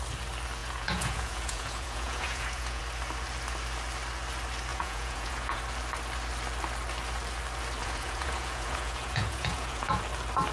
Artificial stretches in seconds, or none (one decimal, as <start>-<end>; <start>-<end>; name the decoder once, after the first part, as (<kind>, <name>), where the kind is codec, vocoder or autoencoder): 0.6-2.8 (vocoder, Vocos); 4.7-5.6; 7.8-10.0